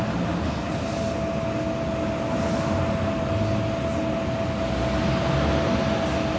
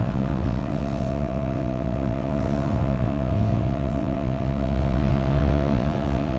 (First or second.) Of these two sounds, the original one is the first